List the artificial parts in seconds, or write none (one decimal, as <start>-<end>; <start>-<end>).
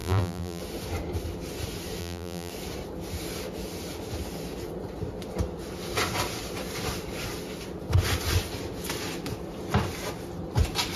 0.0-0.6; 2.0-2.5